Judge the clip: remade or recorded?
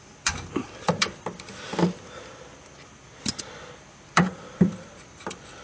remade